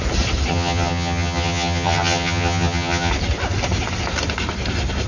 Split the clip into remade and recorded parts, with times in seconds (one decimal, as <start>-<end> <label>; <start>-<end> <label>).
0.0-0.5 recorded; 0.5-3.1 remade; 3.1-5.1 recorded